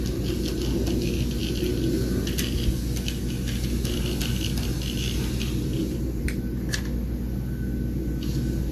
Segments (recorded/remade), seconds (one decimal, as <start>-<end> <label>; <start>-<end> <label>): 0.0-8.7 recorded